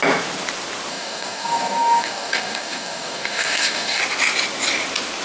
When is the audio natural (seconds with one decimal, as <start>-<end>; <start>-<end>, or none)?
0.0-0.9; 4.0-5.2